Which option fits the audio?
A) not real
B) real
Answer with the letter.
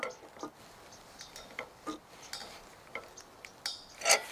B